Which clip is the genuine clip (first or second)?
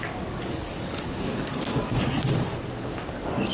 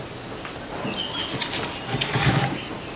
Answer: second